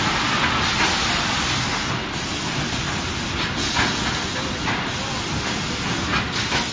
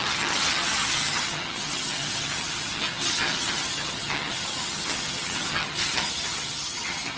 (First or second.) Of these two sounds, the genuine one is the first